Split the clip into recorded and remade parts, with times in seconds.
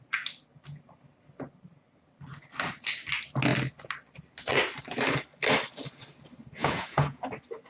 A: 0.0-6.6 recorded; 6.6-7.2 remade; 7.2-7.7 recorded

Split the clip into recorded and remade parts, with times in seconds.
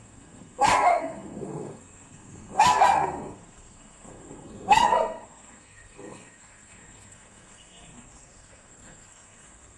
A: 0.0-9.8 remade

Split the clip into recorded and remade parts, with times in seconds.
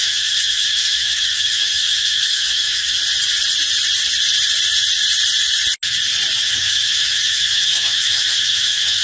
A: 0.0-3.0 remade; 3.0-6.4 recorded; 6.4-9.0 remade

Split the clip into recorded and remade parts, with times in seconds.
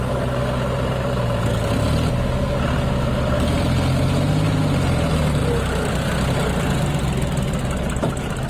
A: 0.0-8.5 recorded